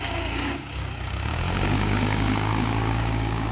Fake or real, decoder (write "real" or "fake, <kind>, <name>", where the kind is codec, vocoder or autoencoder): fake, codec, DAC